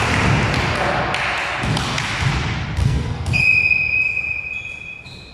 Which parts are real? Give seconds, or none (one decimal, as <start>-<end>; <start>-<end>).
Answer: 0.0-2.8; 3.4-5.3